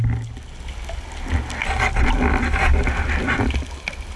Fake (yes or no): no